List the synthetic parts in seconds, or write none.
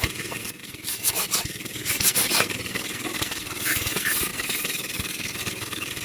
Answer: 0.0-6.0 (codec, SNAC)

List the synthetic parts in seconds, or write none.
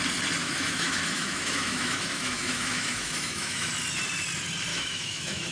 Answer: 0.4-3.7 (autoencoder, DAC-VAE); 4.7-5.5